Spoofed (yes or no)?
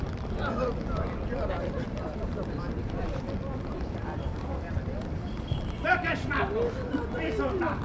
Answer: yes